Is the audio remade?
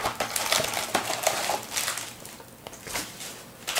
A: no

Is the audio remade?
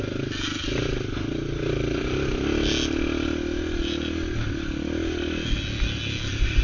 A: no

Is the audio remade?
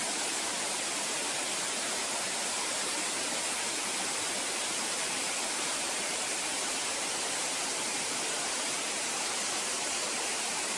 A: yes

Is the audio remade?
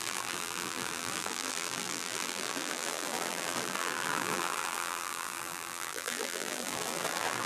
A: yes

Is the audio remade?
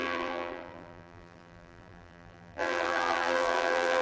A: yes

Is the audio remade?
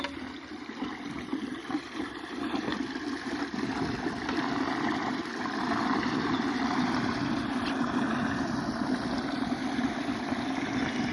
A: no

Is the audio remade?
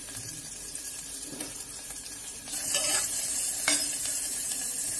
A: yes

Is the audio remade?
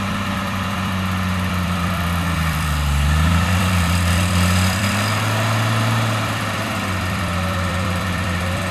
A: yes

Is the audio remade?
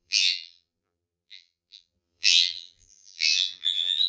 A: yes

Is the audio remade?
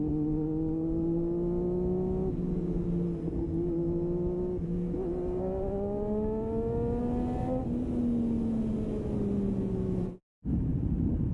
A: no